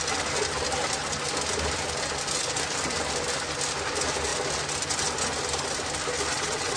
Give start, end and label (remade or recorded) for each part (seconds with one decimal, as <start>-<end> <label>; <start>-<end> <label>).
0.0-6.3 recorded; 6.3-6.8 remade